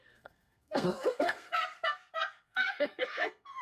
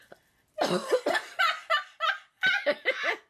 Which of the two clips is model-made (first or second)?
first